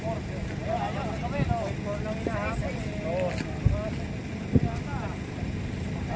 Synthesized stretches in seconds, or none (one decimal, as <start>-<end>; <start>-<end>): none